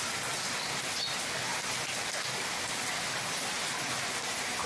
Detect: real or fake real